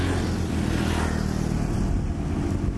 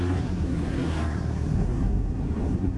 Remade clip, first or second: second